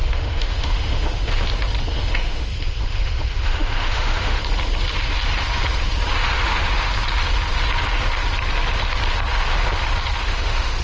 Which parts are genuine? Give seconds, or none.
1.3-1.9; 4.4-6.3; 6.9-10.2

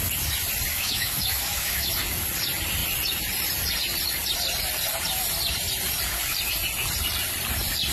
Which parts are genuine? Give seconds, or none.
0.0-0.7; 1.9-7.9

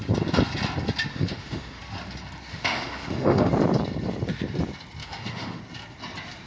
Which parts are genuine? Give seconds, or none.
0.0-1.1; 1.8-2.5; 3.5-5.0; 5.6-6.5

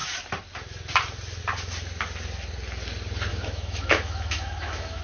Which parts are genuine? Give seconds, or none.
0.0-3.3

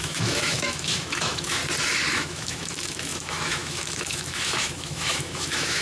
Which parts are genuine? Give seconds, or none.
1.6-2.1

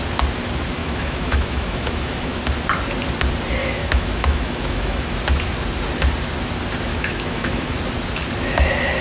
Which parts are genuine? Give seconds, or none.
0.0-0.8; 2.4-3.6; 5.1-6.9; 7.8-9.0

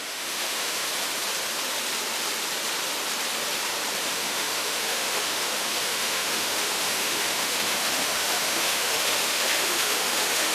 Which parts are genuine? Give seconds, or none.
0.9-4.0